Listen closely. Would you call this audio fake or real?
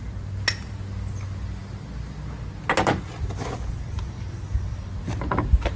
real